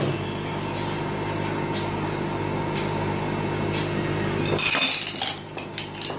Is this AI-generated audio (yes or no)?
no